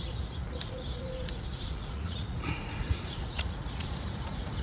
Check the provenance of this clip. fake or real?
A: fake